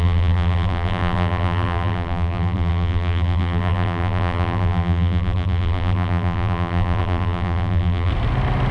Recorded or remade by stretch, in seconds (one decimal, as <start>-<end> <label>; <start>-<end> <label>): 0.0-8.1 remade; 8.1-8.7 recorded